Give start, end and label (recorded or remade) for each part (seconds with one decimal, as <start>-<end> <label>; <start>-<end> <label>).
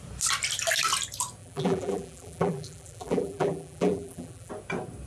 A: 0.0-1.4 recorded; 1.4-4.5 remade; 4.5-5.1 recorded